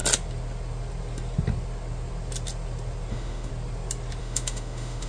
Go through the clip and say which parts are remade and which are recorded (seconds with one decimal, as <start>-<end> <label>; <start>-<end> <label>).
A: 0.0-3.1 recorded; 3.1-3.5 remade; 3.5-4.2 recorded; 4.2-5.1 remade